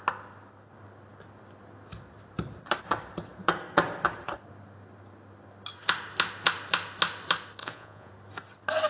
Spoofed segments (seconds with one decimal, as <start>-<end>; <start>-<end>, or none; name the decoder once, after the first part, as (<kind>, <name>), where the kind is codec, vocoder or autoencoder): 7.6-8.1 (vocoder, Vocos)